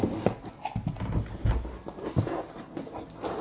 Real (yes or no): yes